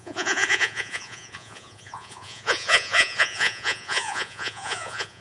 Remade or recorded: remade